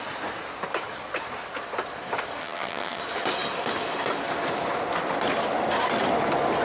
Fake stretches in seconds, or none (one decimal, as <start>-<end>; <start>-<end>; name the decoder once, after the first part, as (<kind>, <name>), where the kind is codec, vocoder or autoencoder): 2.4-3.0 (vocoder, HiFi-GAN)